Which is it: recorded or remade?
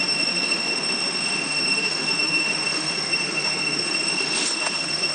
remade